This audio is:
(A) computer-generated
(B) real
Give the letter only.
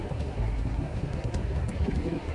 A